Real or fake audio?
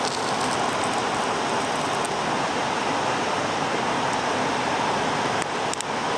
real